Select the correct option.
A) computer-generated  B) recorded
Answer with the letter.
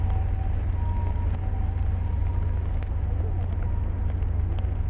B